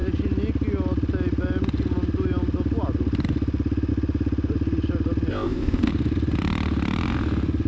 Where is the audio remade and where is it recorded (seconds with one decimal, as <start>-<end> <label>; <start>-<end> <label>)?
0.0-5.3 recorded; 5.3-5.9 remade; 5.9-7.7 recorded